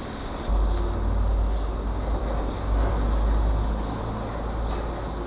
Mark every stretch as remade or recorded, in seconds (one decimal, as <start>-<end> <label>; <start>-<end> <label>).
0.0-2.2 recorded; 2.2-2.9 remade; 2.9-5.3 recorded